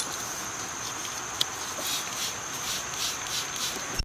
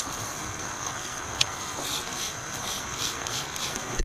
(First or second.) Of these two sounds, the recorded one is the first